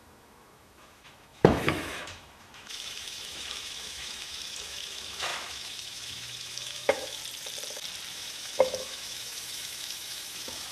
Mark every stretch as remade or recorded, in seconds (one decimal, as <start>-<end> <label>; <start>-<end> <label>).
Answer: 0.0-7.2 remade; 7.2-8.1 recorded; 8.1-10.7 remade